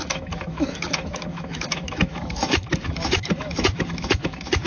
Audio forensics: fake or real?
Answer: fake